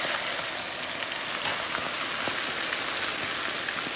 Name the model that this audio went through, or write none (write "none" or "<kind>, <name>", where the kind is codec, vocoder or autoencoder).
none